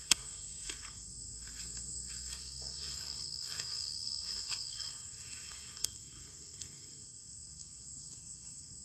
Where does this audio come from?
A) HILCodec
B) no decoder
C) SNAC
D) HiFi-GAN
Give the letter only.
C